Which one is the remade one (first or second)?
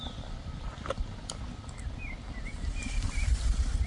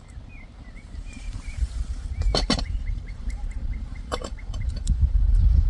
second